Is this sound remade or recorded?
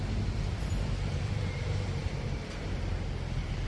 remade